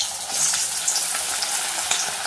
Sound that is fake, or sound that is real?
real